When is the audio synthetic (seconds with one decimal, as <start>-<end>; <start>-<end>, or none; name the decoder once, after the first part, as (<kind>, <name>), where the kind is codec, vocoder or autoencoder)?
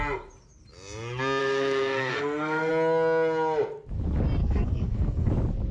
1.4-2.7 (codec, SNAC); 4.4-5.3